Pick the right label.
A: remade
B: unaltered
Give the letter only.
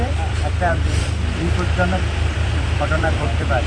A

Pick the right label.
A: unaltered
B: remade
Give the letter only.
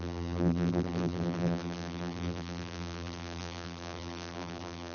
B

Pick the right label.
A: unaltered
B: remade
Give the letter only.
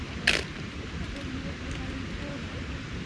B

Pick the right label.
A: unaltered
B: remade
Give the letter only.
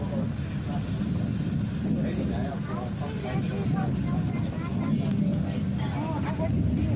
A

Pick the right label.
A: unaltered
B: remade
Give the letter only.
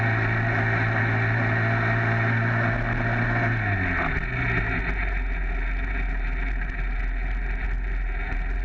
A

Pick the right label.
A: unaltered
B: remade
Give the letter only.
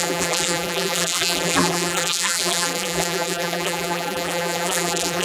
B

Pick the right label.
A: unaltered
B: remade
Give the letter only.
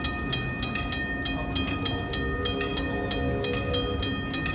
A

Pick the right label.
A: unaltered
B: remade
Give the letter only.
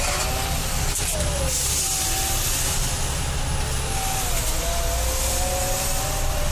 A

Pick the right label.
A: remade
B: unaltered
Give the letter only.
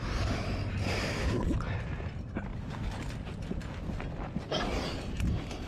B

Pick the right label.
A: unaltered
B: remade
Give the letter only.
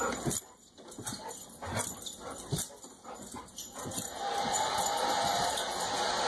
A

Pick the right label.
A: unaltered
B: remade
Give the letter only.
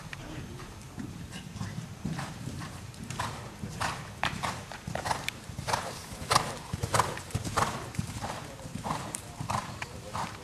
B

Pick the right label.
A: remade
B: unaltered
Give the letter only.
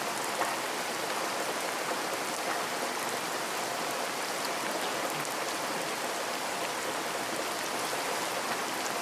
B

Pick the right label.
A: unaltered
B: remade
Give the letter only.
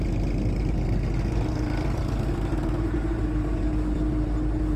A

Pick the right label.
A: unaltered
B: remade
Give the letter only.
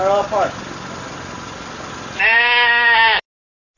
A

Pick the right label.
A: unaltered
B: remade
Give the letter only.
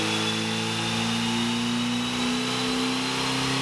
A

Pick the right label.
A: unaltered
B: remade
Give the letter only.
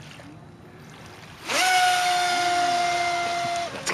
A